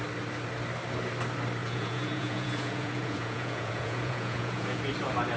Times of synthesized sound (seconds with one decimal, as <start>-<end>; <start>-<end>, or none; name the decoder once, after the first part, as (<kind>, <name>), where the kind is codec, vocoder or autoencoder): 1.6-4.8 (vocoder, Vocos)